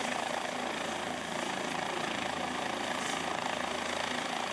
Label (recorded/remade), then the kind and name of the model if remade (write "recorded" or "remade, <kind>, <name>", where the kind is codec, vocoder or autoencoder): recorded